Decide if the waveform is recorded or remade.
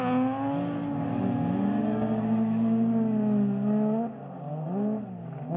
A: recorded